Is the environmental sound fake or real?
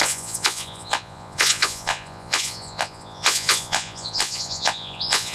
fake